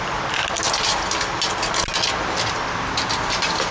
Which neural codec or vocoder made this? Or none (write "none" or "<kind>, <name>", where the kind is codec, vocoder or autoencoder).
none